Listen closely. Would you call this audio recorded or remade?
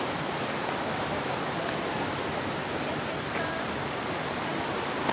recorded